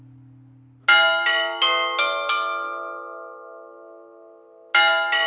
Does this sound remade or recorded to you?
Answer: recorded